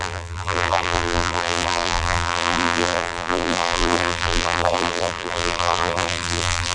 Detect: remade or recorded remade